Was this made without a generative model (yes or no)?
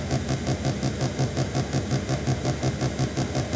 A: yes